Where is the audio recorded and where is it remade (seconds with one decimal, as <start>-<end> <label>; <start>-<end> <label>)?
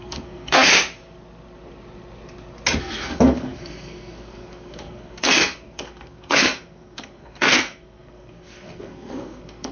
0.0-0.7 remade; 0.7-2.8 recorded; 2.8-9.7 remade